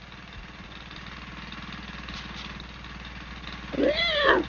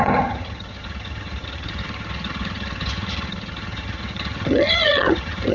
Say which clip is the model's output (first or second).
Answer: second